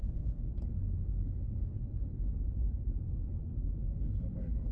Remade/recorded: remade